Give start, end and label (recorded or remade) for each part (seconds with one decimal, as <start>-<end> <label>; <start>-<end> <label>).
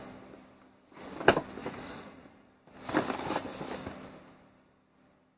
0.0-1.6 recorded; 1.6-2.5 remade; 2.5-5.4 recorded